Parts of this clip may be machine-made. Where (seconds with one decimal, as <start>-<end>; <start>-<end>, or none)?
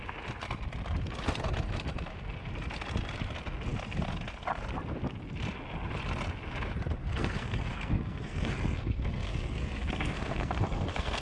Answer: 7.0-11.2